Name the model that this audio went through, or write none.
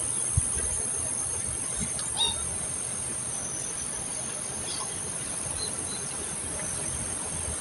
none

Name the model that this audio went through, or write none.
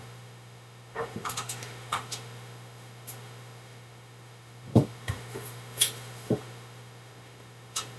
autoencoder, DAC-VAE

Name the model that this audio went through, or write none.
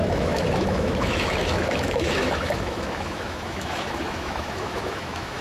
autoencoder, DAC-VAE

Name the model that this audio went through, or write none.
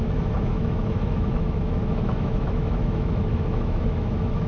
autoencoder, DAC-VAE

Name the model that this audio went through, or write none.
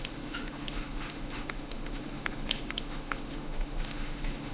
autoencoder, DAC-VAE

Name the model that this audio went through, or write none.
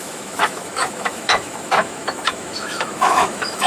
autoencoder, DAC-VAE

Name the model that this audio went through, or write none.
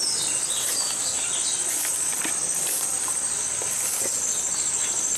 none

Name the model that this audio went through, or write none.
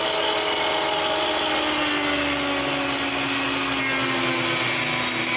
none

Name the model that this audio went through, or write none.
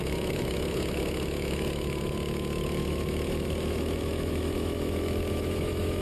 autoencoder, DAC-VAE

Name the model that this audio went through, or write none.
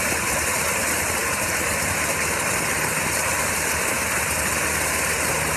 none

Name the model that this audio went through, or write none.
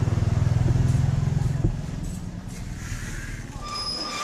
none